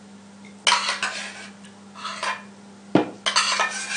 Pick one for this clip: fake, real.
real